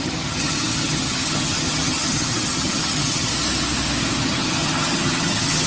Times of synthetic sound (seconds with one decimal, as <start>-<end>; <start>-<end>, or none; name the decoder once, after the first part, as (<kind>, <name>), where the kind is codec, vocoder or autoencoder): 0.0-3.3 (vocoder, HiFi-GAN); 4.2-5.7